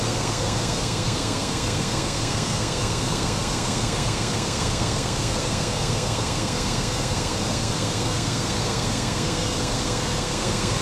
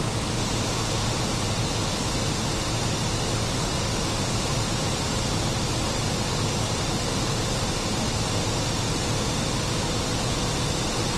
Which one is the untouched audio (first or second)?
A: second